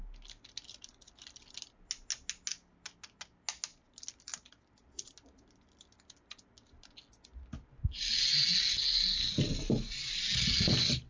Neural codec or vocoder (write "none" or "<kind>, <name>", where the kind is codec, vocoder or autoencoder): none